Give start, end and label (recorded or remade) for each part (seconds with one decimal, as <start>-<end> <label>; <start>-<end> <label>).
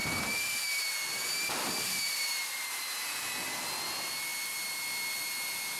0.0-0.8 remade; 0.8-1.4 recorded; 1.4-3.3 remade; 3.3-5.8 recorded